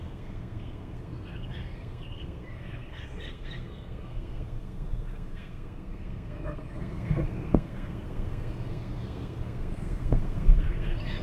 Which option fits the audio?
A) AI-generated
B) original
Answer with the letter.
A